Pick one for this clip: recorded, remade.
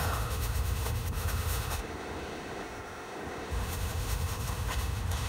remade